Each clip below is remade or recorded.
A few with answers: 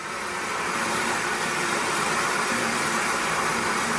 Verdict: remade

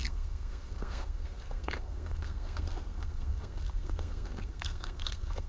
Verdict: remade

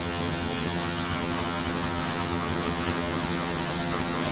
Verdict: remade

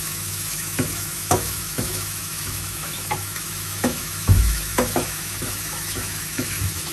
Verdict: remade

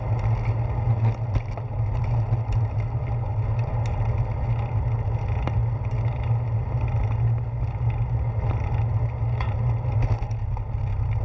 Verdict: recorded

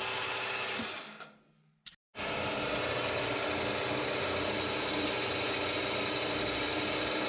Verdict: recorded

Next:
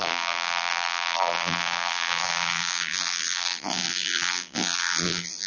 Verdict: remade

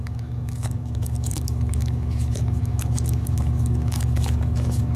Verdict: remade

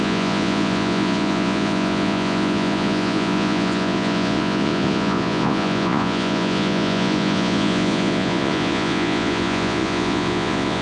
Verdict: remade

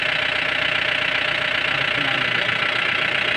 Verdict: recorded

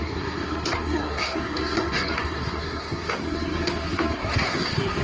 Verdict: remade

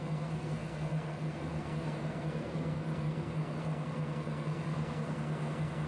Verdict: remade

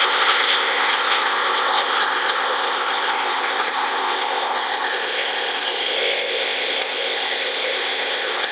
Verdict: remade